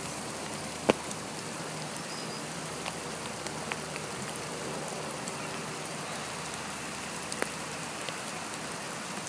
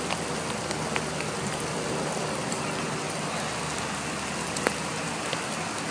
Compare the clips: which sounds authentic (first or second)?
second